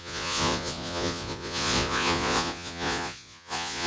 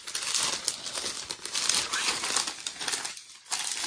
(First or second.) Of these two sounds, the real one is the second